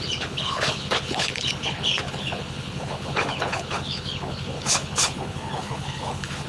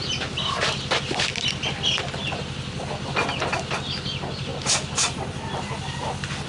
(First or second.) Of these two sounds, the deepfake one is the first